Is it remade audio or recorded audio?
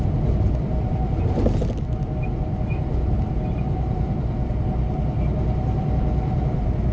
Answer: recorded